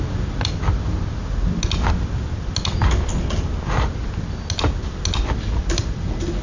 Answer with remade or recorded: recorded